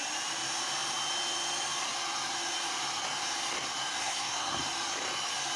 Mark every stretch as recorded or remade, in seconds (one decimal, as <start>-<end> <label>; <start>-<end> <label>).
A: 0.0-4.0 recorded; 4.0-4.6 remade; 4.6-5.6 recorded